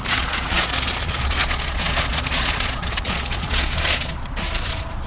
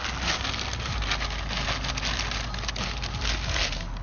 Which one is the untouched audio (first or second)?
second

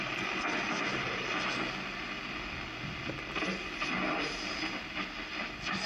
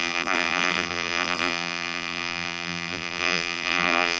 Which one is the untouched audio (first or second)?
first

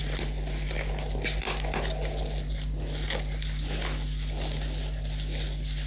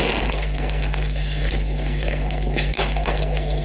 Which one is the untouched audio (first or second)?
first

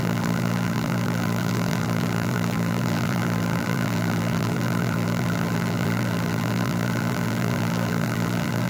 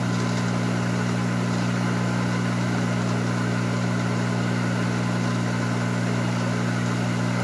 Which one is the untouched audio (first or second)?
second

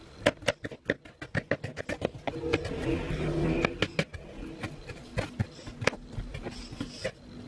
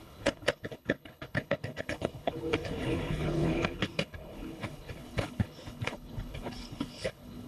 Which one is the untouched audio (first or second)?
first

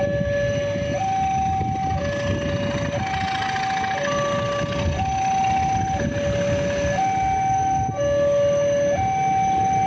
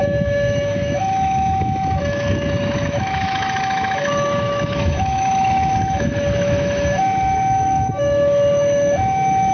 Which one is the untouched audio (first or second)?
first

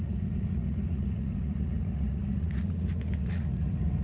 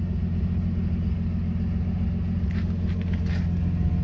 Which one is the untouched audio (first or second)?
second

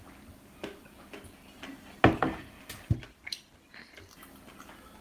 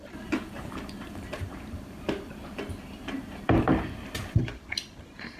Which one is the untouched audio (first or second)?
first